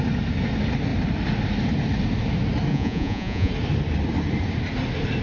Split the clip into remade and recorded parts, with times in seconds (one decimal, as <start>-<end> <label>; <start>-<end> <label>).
0.0-2.7 recorded; 2.7-3.5 remade; 3.5-5.2 recorded